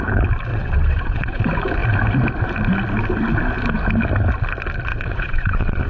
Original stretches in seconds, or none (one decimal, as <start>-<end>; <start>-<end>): 0.0-0.5; 1.4-4.9